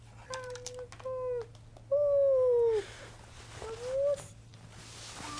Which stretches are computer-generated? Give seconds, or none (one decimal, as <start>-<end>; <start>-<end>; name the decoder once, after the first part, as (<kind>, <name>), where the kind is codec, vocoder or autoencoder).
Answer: none